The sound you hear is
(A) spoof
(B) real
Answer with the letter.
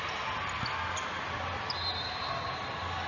B